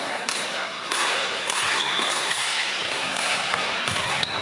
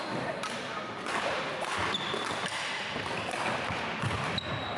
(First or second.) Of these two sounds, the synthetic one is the first